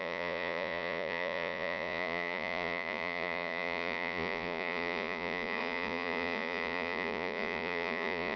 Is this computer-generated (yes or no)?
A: yes